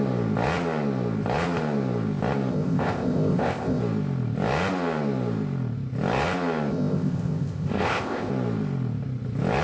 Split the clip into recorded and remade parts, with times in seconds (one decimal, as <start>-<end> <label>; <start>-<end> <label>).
0.0-2.5 recorded; 2.5-3.8 remade; 3.8-6.7 recorded; 6.7-8.3 remade; 8.3-9.6 recorded